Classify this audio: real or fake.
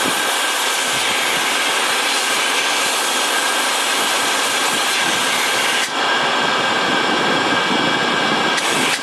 real